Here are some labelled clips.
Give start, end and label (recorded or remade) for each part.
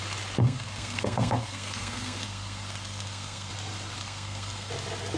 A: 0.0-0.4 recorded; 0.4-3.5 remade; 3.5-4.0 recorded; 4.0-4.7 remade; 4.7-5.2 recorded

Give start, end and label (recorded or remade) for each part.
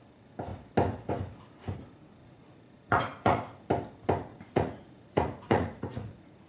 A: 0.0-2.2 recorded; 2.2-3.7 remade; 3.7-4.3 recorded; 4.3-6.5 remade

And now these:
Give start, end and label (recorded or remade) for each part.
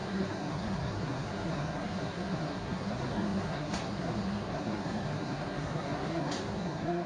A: 0.0-7.1 remade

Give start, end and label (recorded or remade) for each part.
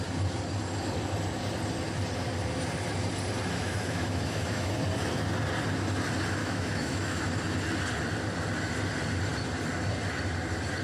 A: 0.0-3.6 recorded; 3.6-4.7 remade; 4.7-6.4 recorded; 6.4-7.2 remade; 7.2-10.8 recorded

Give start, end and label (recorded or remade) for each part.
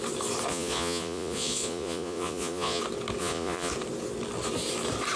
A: 0.0-0.5 recorded; 0.5-2.8 remade; 2.8-3.2 recorded; 3.2-3.7 remade; 3.7-5.2 recorded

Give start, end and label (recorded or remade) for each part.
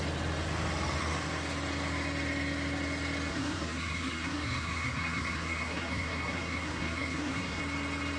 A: 0.0-3.3 recorded; 3.3-7.6 remade; 7.6-8.2 recorded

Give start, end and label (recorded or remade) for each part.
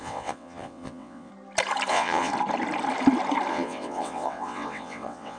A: 0.0-1.3 remade; 1.3-1.9 recorded; 1.9-2.3 remade; 2.3-3.5 recorded; 3.5-5.4 remade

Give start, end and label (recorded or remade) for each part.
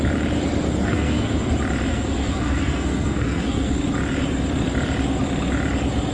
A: 0.0-0.8 recorded; 0.8-1.5 remade; 1.5-1.9 recorded; 1.9-3.8 remade; 3.8-6.1 recorded